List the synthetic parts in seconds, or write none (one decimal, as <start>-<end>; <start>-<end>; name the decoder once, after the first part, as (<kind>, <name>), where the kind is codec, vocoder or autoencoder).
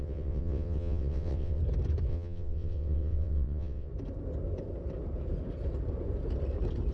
0.0-1.6 (vocoder, WaveNeXt); 2.1-3.9